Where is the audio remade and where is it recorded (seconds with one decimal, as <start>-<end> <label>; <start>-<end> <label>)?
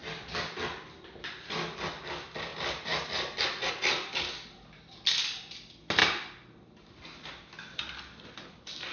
0.0-8.9 recorded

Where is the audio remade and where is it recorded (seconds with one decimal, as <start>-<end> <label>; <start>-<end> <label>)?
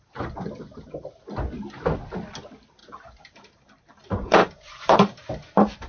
0.0-2.8 recorded; 2.8-5.9 remade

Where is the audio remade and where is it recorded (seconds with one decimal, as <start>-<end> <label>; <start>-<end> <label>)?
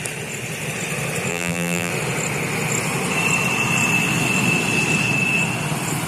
0.0-1.3 recorded; 1.3-1.9 remade; 1.9-6.1 recorded